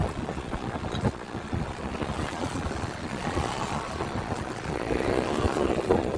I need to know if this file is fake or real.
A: fake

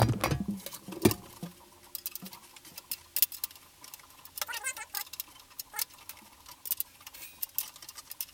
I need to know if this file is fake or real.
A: real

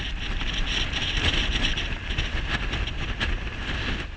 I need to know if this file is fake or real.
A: real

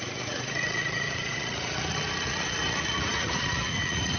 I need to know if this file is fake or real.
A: fake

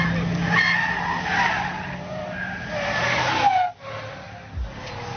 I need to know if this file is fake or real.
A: real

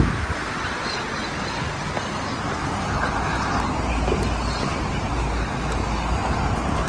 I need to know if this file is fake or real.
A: real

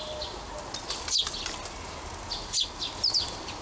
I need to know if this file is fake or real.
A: real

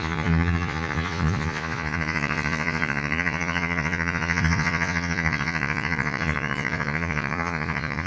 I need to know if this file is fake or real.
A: fake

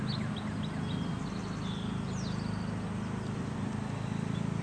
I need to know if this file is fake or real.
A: real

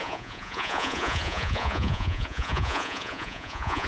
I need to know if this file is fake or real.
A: fake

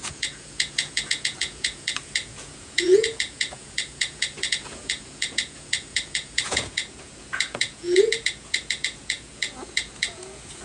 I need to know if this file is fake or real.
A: fake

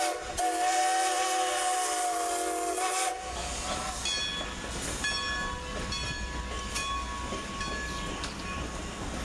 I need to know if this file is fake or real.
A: real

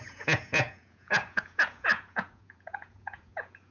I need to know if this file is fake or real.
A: fake